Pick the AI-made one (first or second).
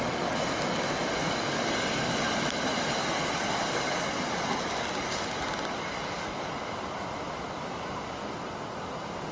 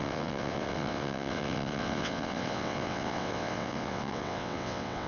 second